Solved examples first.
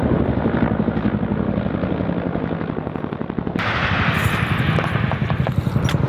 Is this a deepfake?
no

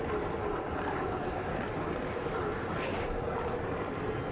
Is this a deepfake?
no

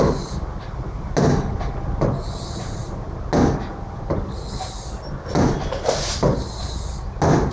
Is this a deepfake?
no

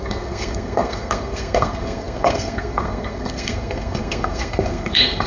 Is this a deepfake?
yes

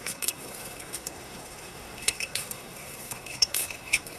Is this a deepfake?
yes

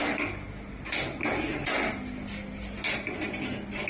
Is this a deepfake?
no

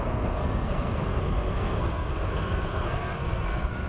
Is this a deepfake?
yes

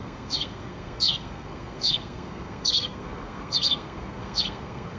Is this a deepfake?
yes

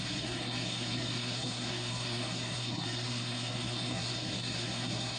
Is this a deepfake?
yes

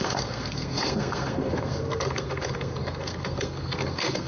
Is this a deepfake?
yes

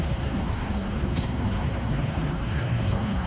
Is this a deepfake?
yes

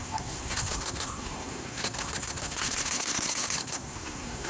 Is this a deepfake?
yes